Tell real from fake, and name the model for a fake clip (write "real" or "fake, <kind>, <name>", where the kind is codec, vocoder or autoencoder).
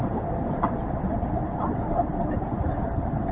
fake, vocoder, BigVGAN v2